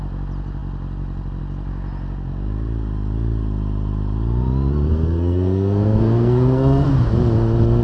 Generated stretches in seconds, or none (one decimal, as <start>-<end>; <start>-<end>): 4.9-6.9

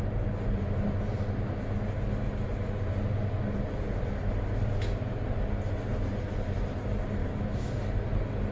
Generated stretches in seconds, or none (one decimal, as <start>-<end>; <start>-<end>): 7.2-7.8

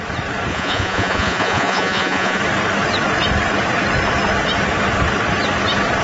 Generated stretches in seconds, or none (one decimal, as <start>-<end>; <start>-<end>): 0.5-2.4